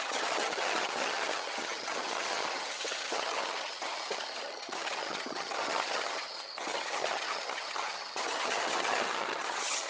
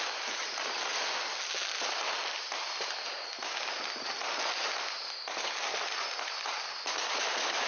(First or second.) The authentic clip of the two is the second